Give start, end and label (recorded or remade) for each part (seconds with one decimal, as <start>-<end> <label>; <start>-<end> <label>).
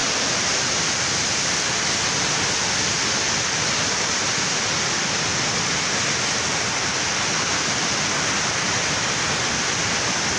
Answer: 0.0-10.4 recorded